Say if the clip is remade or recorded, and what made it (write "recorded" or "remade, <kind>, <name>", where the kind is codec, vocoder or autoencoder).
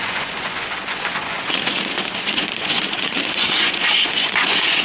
remade, vocoder, Vocos